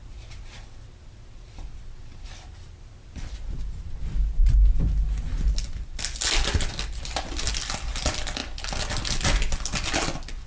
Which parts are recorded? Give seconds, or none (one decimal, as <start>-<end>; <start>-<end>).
0.0-10.5